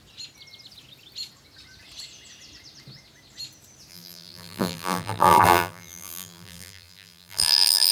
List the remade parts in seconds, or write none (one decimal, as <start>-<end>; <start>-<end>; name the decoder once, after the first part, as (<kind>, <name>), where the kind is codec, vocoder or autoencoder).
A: 3.9-7.9 (vocoder, BigVGAN v2)